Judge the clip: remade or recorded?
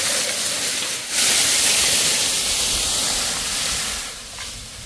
recorded